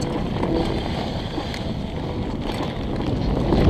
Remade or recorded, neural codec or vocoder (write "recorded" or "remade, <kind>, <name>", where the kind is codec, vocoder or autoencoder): recorded